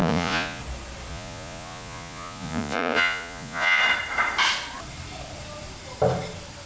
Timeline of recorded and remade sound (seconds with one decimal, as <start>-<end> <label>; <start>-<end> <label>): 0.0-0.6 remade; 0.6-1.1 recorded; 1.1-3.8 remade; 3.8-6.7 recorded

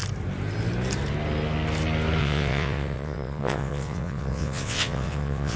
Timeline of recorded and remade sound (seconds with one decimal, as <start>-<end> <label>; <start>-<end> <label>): 0.0-2.2 recorded; 2.2-5.6 remade

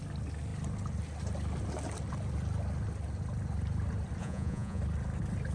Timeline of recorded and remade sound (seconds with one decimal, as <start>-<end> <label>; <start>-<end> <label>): 0.0-4.2 recorded; 4.2-4.8 remade; 4.8-5.5 recorded